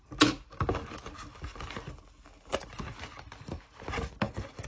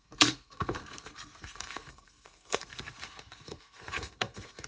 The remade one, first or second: second